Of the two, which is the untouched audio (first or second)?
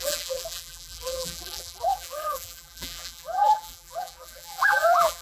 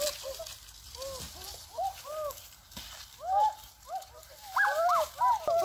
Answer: second